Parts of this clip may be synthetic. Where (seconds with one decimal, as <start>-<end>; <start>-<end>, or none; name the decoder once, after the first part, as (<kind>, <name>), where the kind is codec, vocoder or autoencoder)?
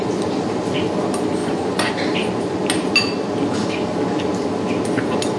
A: 1.4-1.9 (vocoder, Vocos)